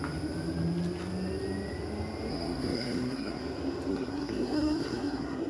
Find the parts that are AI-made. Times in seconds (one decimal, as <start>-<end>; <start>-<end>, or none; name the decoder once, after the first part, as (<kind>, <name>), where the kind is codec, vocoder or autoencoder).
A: 2.3-3.4 (codec, SNAC); 3.9-5.5

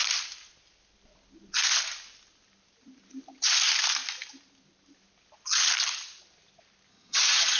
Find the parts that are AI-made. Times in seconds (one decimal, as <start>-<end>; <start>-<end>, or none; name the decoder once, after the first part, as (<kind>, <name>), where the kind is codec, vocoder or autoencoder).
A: 6.9-7.6 (vocoder, HiFi-GAN)

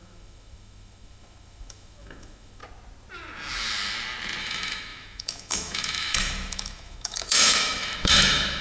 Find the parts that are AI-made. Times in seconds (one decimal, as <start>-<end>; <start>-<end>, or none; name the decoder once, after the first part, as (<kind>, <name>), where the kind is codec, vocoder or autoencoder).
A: 0.0-2.6 (autoencoder, DAC-VAE); 4.4-8.6

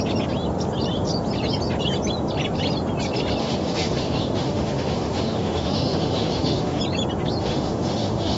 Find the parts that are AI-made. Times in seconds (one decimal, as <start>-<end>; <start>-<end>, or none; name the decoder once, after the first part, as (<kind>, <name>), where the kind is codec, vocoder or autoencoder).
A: 3.4-6.8 (autoencoder, DAC-VAE); 7.4-8.4

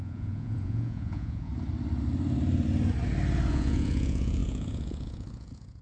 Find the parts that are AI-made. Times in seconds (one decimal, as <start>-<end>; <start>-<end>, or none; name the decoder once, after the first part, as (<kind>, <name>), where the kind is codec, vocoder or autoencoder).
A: 0.0-1.5 (vocoder, Vocos); 3.5-5.8